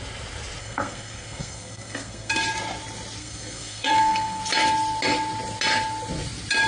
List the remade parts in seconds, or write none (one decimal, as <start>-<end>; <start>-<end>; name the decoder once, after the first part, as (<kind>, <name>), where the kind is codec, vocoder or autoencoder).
0.6-2.3 (codec, SNAC); 3.2-4.4